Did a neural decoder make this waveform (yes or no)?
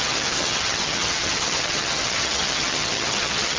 yes